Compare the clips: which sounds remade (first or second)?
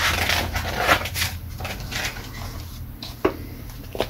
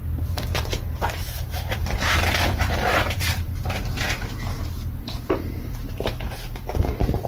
second